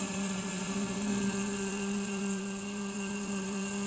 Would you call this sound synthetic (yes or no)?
yes